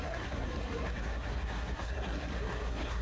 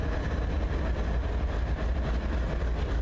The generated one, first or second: first